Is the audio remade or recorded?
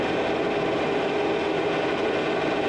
recorded